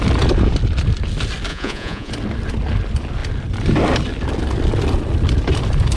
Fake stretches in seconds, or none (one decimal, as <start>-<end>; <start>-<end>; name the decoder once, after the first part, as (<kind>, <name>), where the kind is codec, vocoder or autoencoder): 1.5-2.1 (vocoder, Vocos)